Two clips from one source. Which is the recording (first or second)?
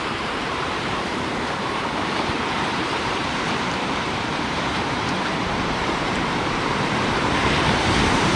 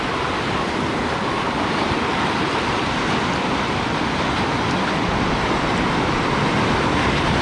second